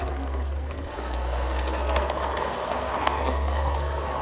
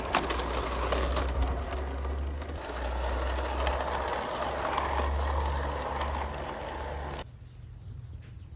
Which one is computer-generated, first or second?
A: first